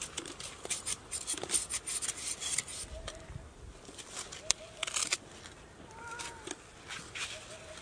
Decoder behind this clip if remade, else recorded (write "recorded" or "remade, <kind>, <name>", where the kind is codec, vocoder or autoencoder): recorded